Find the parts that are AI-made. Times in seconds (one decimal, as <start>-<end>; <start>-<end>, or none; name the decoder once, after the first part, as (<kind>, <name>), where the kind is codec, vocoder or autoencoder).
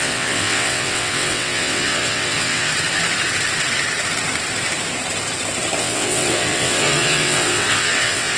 0.0-2.7 (vocoder, WaveNeXt); 5.8-8.4